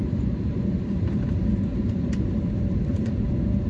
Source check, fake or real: fake